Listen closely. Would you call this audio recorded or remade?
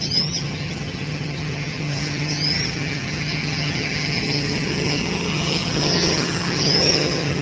remade